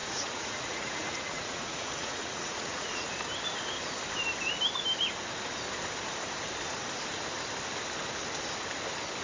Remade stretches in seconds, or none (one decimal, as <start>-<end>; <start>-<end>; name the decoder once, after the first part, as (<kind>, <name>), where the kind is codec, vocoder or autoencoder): 0.0-3.1 (vocoder, Vocos)